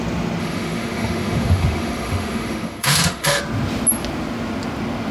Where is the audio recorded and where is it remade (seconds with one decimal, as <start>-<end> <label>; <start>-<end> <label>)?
0.0-0.4 recorded; 0.4-3.4 remade; 3.4-5.1 recorded